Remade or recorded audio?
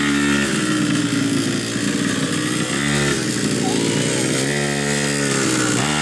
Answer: recorded